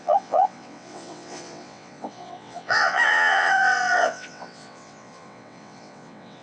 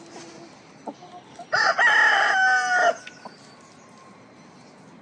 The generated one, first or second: first